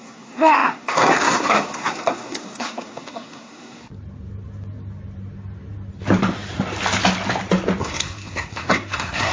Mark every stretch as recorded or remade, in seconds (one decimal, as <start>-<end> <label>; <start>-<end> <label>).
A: 0.0-3.9 remade; 3.9-7.8 recorded; 7.8-9.3 remade